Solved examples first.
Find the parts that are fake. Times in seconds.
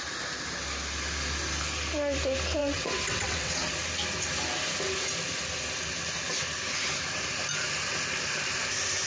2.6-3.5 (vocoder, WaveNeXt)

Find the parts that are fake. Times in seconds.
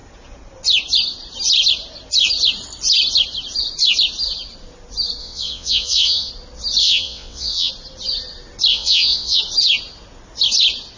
5.2-6.3 (vocoder, WaveNeXt); 6.8-7.7; 8.7-9.4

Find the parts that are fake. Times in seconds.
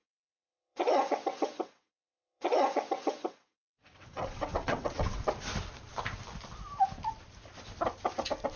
0.0-5.2 (vocoder, WaveNeXt)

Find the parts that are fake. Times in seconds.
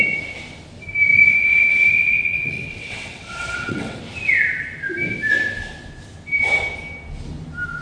1.3-4.0 (vocoder, WaveNeXt)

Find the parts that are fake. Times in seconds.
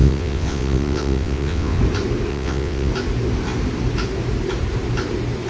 0.0-1.8 (vocoder, WaveNeXt); 2.3-2.9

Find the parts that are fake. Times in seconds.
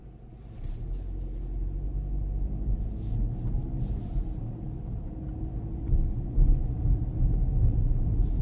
none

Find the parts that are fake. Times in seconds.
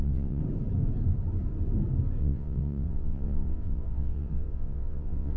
0.0-0.4 (vocoder, WaveNeXt); 2.2-5.4